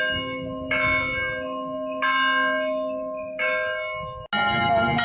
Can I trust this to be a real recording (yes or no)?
yes